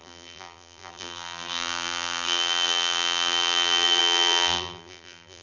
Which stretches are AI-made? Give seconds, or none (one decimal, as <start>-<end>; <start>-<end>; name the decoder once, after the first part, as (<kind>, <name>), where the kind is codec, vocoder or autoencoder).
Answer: 0.0-5.4 (vocoder, BigVGAN v2)